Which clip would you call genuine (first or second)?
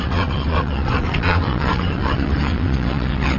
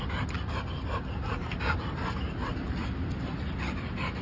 second